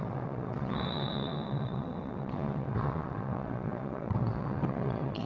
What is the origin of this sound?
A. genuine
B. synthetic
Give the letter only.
B